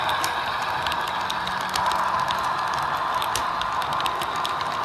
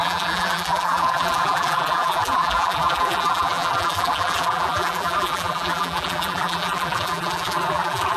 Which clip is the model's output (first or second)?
second